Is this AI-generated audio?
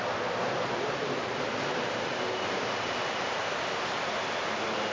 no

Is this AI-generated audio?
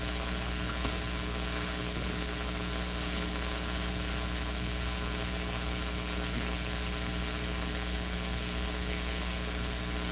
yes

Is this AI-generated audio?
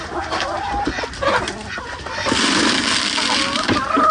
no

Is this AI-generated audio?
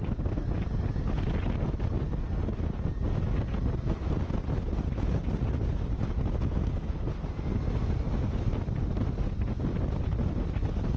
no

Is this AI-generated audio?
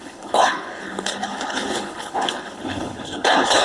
yes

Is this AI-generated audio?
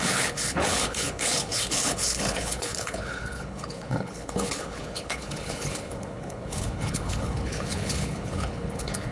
yes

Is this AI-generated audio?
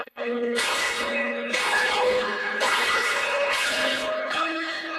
yes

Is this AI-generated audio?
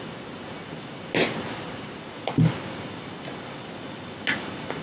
no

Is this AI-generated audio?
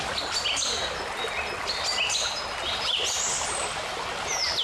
no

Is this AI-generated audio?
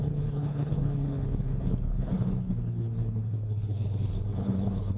yes